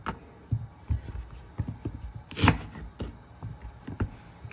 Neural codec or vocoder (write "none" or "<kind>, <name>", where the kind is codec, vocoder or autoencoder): none